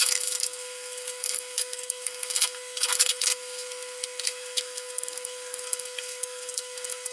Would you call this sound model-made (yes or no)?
yes